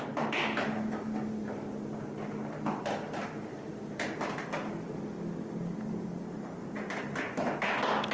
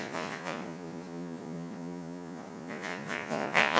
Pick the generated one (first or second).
second